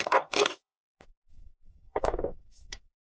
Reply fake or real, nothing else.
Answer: fake